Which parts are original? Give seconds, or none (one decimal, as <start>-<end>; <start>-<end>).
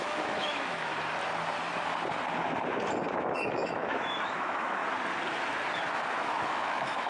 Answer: 0.9-3.2; 4.8-6.2